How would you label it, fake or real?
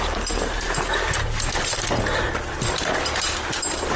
real